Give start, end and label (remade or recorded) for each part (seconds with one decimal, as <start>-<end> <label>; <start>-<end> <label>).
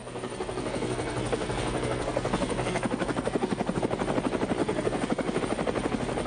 0.0-3.8 remade; 3.8-4.6 recorded; 4.6-5.4 remade; 5.4-6.3 recorded